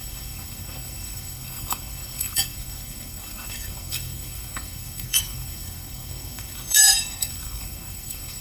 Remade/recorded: remade